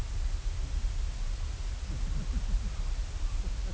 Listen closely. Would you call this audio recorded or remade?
recorded